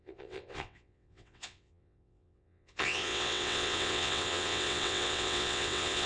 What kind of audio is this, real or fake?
fake